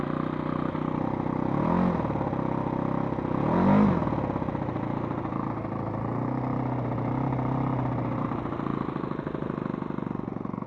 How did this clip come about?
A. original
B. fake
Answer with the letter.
A